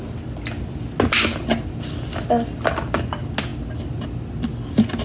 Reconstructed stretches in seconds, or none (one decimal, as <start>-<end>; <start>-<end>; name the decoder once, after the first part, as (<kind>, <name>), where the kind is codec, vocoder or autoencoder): none